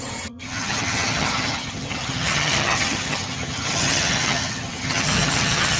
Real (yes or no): no